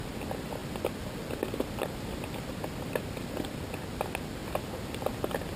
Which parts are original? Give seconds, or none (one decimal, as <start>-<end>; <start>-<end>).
0.0-5.6

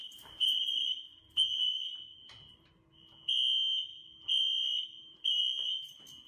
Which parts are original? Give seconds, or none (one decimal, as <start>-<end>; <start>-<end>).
2.7-3.9; 5.4-6.3

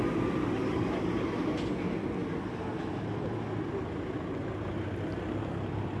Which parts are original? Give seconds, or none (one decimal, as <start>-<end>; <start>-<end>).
0.0-6.0

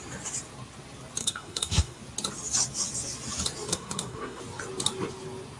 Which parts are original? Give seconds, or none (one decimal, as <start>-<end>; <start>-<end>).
0.0-1.2; 2.0-3.7; 4.4-5.6

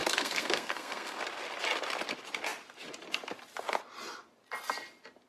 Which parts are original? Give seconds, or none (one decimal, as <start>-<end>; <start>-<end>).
1.2-5.3

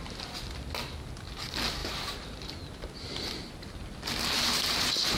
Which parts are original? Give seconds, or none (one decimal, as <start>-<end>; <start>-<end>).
0.0-1.8; 3.3-5.2

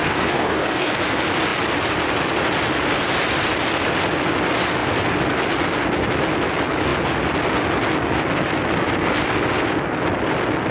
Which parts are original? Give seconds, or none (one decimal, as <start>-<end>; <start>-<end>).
1.0-10.7